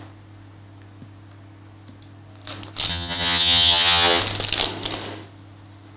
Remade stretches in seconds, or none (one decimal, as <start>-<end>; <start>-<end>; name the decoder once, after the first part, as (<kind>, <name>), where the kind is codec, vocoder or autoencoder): 2.9-4.2 (vocoder, HiFi-GAN)